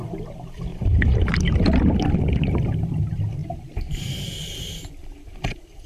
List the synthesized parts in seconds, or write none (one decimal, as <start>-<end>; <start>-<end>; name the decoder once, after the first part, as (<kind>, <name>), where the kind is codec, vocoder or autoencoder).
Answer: 0.7-2.1 (vocoder, BigVGAN v2); 3.4-4.7